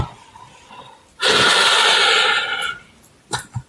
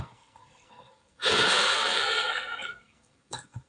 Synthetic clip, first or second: second